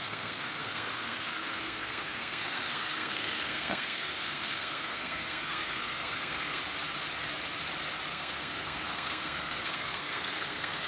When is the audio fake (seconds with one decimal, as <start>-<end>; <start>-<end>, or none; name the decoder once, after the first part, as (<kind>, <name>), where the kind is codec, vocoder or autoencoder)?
0.0-6.6 (codec, SNAC); 8.1-10.9